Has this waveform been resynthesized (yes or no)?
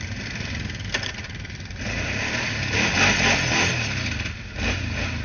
no